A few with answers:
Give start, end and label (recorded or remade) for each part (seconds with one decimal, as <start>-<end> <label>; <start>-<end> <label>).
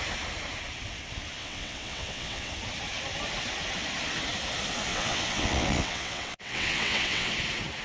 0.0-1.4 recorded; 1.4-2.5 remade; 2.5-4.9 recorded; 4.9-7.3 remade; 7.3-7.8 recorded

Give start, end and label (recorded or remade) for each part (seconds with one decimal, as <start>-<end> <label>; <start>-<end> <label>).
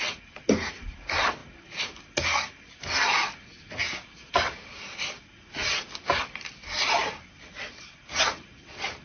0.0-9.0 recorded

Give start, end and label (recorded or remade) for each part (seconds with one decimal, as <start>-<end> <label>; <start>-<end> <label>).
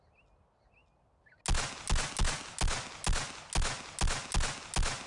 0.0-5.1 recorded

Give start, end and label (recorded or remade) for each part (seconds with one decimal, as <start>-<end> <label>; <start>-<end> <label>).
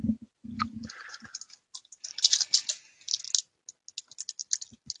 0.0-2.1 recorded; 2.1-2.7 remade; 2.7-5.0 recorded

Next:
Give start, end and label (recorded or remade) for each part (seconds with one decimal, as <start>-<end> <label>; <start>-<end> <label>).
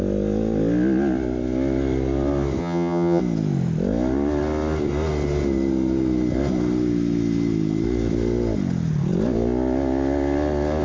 0.0-2.6 recorded; 2.6-3.2 remade; 3.2-10.8 recorded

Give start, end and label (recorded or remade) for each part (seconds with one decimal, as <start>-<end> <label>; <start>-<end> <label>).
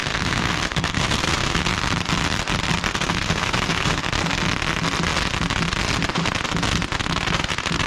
0.0-1.6 remade; 1.6-2.9 recorded; 2.9-4.0 remade; 4.0-7.9 recorded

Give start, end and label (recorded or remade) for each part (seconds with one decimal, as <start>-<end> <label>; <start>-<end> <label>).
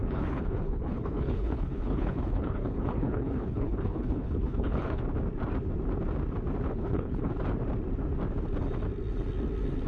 0.0-5.0 remade; 5.0-6.7 recorded; 6.7-7.3 remade; 7.3-9.9 recorded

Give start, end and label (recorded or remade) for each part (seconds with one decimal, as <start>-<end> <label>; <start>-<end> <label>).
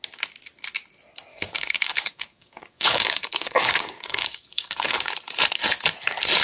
0.0-1.3 recorded; 1.3-5.1 remade; 5.1-6.4 recorded